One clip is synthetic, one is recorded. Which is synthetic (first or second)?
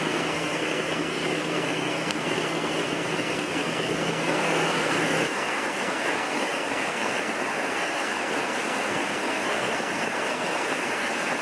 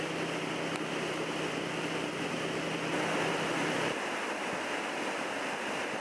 first